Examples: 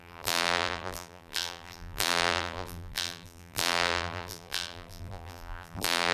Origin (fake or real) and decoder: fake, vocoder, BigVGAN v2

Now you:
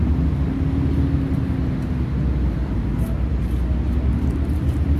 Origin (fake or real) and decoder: real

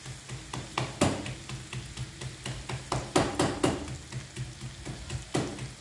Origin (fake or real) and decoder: real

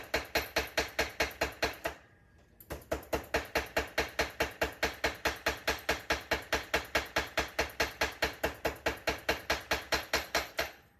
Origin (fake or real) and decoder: real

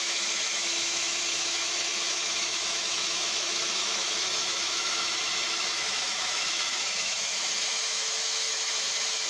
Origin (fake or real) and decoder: fake, autoencoder, DAC-VAE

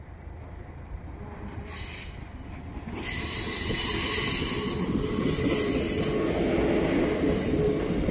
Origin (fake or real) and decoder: real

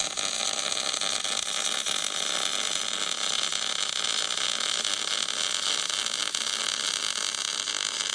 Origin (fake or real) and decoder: real